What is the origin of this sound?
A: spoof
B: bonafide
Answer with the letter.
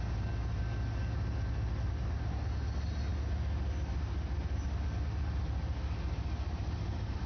B